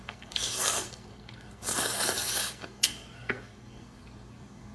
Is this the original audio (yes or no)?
no